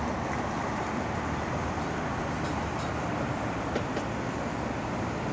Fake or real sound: real